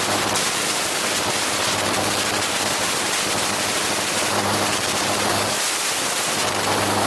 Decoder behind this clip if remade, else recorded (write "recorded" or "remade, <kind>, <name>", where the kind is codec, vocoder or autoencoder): recorded